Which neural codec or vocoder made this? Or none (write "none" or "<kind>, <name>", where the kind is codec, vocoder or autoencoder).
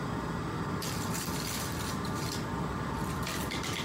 none